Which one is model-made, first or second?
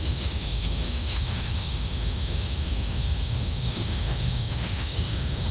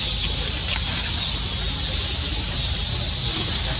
first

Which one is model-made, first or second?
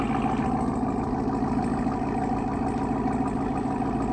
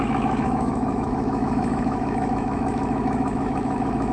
second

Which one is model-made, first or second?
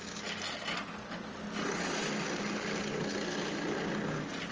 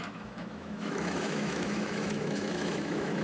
second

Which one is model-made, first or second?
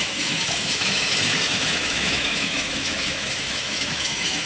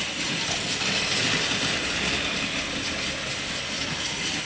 first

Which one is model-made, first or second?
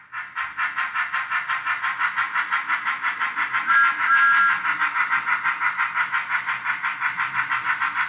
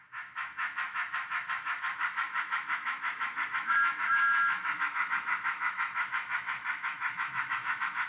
second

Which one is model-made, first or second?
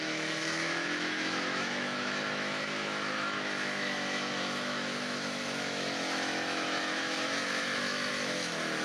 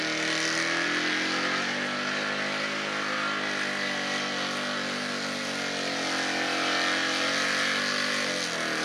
first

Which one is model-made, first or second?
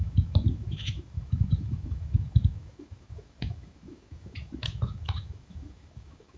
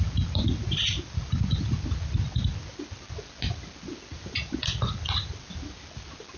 first